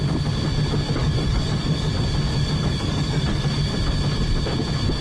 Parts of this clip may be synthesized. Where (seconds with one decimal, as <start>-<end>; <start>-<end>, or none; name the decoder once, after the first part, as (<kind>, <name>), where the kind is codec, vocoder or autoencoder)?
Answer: 1.0-1.9 (codec, DAC); 2.3-3.5